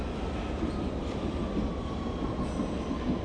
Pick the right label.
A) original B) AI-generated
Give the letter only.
A